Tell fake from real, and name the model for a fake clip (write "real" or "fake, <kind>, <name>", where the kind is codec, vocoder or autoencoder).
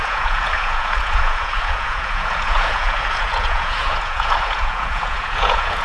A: fake, vocoder, Vocos